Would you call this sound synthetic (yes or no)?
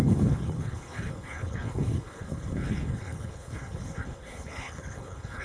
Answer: yes